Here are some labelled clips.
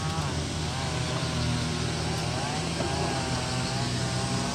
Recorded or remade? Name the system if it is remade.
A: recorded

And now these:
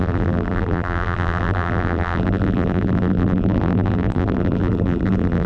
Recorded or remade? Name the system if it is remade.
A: remade, vocoder, BigVGAN v2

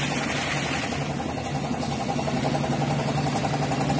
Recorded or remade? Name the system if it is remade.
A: recorded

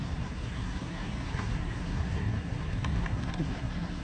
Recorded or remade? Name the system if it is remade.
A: remade, codec, SNAC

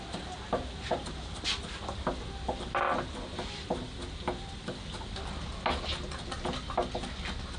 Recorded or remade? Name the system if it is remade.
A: recorded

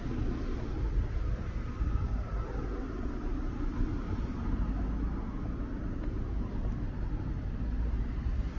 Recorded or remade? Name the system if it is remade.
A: recorded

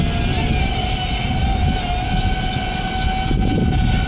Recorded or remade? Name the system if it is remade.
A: recorded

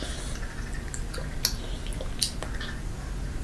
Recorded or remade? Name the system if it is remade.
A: recorded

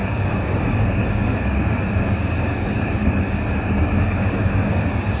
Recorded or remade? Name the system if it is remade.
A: remade, codec, DAC